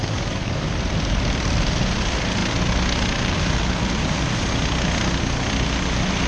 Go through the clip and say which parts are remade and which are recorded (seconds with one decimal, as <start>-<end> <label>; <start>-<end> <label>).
0.0-0.7 remade; 0.7-6.3 recorded